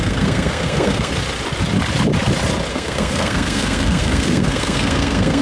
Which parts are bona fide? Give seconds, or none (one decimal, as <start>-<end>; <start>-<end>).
1.1-2.7